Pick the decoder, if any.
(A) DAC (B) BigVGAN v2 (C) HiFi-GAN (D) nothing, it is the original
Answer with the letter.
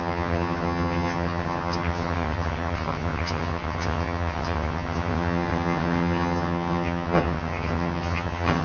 C